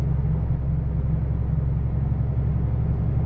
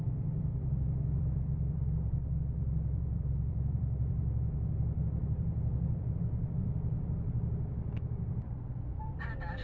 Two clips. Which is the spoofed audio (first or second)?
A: second